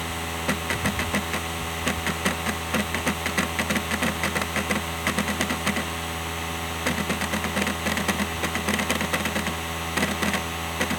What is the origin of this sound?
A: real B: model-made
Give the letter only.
A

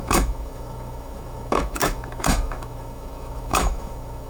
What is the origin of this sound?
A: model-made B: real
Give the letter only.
A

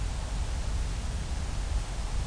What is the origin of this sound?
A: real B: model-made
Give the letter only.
A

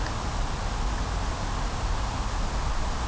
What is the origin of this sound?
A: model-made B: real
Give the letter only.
B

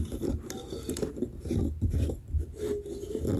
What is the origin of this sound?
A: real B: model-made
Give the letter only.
A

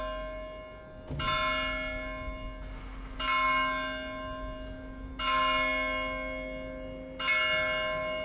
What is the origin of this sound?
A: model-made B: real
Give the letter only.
B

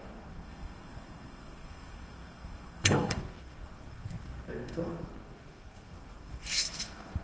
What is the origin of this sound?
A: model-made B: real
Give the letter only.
A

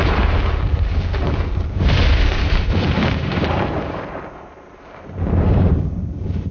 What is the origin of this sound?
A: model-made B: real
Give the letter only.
A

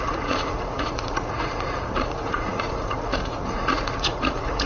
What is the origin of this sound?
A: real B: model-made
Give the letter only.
B